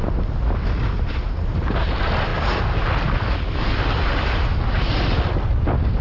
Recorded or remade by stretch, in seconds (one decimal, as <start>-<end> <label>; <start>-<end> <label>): 0.0-6.0 recorded